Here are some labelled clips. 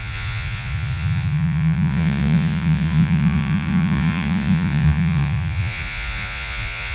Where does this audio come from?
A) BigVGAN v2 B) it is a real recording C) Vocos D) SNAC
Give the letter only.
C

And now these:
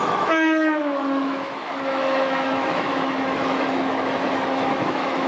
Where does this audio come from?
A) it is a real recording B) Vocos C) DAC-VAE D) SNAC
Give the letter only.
C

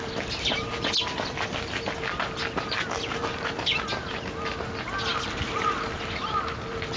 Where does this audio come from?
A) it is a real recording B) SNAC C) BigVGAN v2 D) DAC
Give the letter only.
A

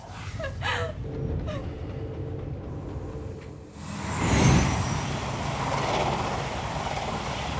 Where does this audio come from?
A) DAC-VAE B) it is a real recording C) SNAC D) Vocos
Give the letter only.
B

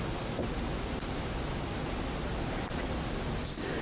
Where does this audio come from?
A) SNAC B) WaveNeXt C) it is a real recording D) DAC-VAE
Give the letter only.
C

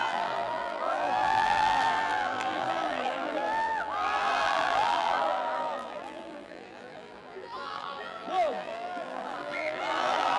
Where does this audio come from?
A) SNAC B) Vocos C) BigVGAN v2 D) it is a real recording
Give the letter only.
C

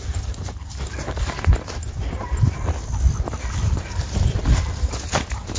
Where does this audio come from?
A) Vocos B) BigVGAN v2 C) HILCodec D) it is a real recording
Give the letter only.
B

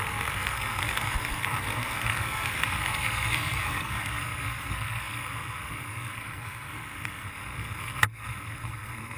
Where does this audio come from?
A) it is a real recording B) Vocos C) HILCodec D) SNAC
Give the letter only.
D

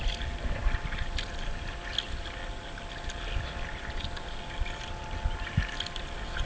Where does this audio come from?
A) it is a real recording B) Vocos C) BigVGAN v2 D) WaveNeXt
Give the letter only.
A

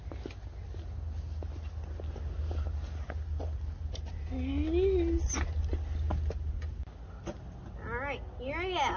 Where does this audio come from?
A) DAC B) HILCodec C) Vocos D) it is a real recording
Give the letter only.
D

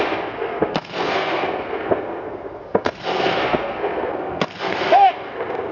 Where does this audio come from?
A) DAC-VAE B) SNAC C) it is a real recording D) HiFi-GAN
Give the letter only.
B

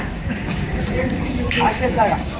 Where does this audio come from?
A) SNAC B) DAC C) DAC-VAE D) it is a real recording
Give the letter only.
B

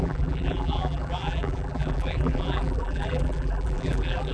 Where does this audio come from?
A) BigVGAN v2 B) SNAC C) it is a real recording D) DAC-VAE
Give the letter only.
A